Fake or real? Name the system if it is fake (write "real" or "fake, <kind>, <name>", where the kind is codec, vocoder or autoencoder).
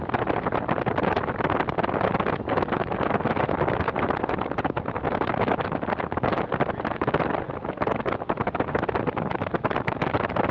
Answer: real